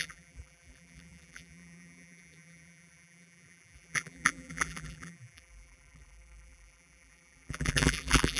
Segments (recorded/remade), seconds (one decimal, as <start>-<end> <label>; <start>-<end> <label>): 0.0-8.4 remade